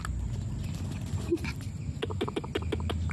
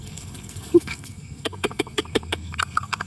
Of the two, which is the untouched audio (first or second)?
first